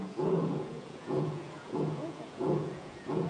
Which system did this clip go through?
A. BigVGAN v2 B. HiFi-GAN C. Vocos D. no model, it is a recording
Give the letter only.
C